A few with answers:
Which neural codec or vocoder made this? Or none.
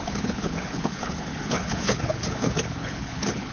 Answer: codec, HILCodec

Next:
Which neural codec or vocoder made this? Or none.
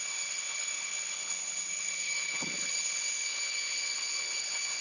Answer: codec, HILCodec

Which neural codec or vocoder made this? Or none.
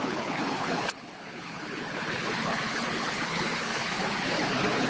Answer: codec, HILCodec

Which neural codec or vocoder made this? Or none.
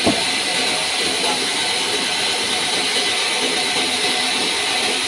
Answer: none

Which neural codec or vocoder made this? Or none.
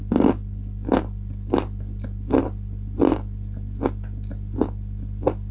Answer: none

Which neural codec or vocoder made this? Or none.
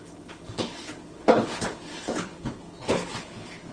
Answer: codec, HILCodec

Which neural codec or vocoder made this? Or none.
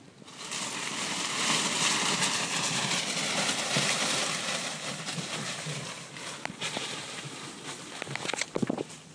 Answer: none